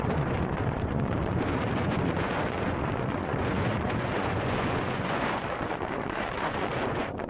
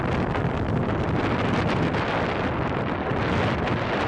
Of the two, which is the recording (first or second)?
second